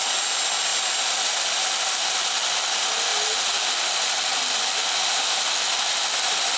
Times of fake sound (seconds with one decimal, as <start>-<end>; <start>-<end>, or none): none